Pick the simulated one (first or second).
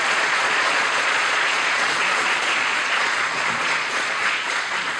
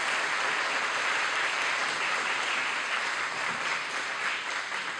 first